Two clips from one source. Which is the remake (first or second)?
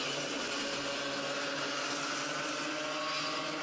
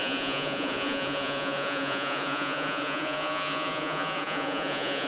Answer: second